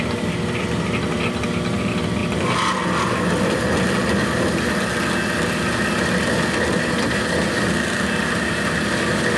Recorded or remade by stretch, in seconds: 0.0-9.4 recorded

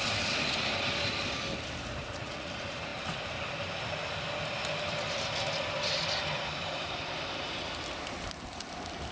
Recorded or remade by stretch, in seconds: 0.0-2.0 recorded; 2.0-2.5 remade; 2.5-9.1 recorded

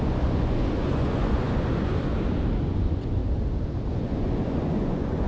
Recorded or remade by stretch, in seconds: 0.0-2.1 remade; 2.1-2.6 recorded; 2.6-3.2 remade; 3.2-3.9 recorded; 3.9-5.3 remade

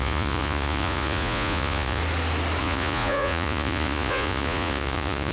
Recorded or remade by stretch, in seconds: 0.0-2.0 remade; 2.0-2.6 recorded; 2.6-5.3 remade

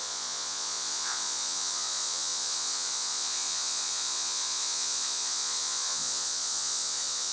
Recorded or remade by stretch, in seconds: 0.0-7.3 remade

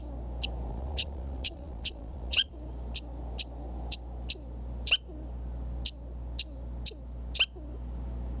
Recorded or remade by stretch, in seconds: 0.0-0.7 recorded; 0.7-2.5 remade; 2.5-8.4 recorded

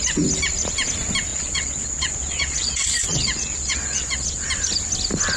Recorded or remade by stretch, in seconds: 0.0-1.3 recorded; 1.3-4.5 remade; 4.5-5.4 recorded

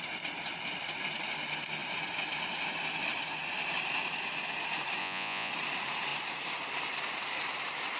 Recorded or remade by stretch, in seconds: 0.0-5.0 recorded; 5.0-5.5 remade; 5.5-8.0 recorded